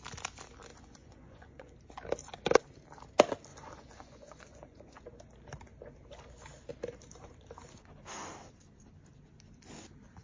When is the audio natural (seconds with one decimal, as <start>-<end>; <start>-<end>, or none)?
0.0-0.7; 1.7-3.5; 5.0-10.2